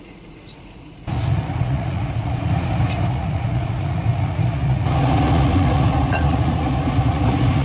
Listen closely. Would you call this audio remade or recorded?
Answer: remade